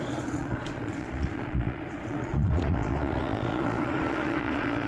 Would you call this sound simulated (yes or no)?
yes